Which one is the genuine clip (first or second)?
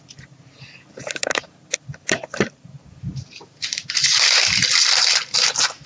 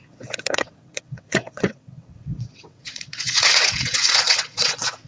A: first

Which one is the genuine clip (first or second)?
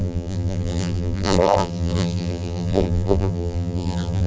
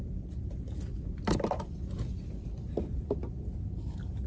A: second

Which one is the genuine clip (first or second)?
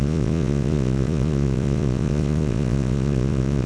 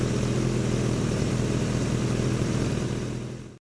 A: second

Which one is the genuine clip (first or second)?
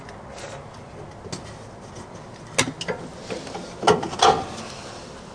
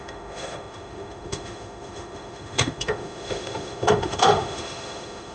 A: first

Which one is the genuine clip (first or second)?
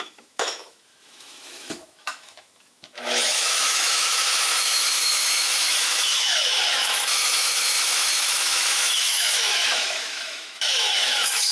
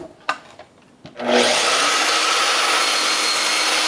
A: second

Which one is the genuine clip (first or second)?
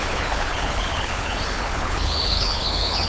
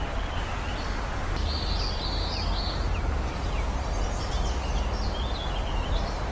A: second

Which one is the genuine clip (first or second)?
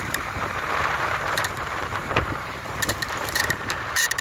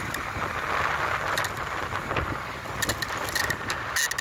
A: second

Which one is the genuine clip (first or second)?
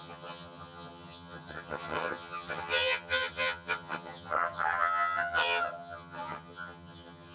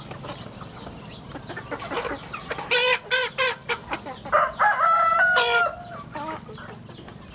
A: second